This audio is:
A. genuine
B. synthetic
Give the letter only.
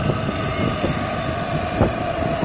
A